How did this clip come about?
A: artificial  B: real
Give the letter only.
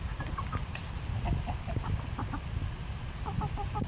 B